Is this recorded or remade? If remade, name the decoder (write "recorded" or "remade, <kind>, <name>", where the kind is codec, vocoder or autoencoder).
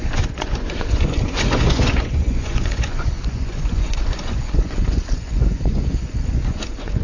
remade, vocoder, Vocos